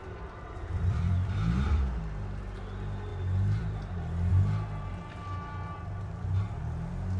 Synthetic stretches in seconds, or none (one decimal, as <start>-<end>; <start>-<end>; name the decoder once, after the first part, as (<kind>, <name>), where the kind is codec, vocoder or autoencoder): 0.0-2.0 (vocoder, BigVGAN v2); 3.1-3.7